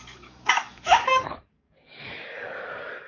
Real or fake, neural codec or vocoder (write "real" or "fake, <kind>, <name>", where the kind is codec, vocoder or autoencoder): fake, codec, DAC